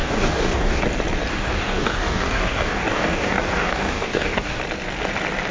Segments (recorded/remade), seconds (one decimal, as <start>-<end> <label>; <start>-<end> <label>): 0.0-0.8 remade; 0.8-1.3 recorded; 1.3-4.6 remade; 4.6-5.5 recorded